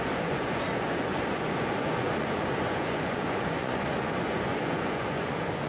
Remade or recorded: remade